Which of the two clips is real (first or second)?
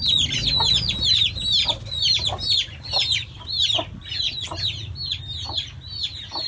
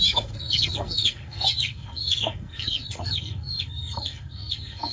first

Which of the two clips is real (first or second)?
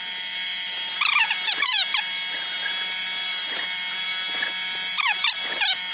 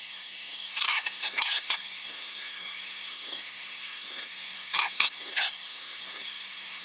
first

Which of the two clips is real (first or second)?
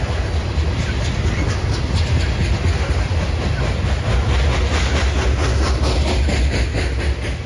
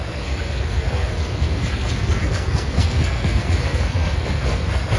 first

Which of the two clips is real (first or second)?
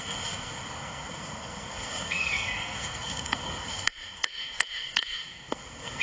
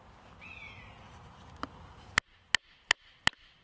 second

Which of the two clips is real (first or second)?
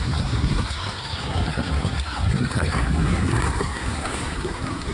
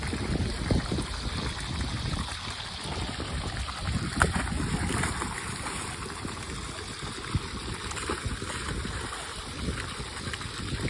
second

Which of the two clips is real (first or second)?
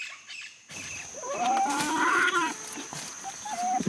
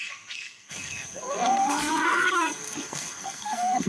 first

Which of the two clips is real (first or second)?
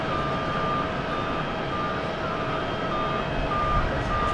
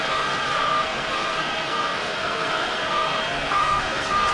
first